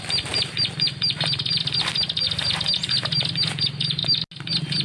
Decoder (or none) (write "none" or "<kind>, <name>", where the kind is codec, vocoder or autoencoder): none